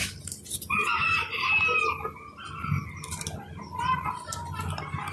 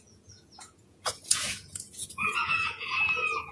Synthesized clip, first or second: second